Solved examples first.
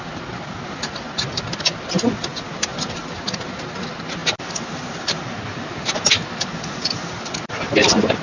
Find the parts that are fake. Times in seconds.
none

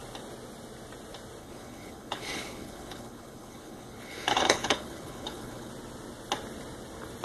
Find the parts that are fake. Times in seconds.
1.4-5.7 (codec, HILCodec)